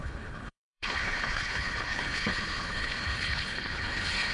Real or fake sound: fake